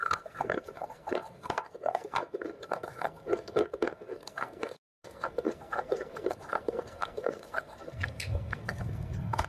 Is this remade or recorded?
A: remade